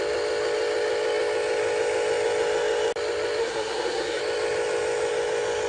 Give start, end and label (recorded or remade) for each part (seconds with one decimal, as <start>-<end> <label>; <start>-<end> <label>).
0.0-3.4 recorded; 3.4-4.2 remade; 4.2-5.7 recorded